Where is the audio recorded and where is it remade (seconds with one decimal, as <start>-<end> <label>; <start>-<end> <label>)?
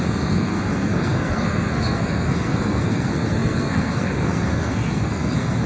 0.0-5.7 remade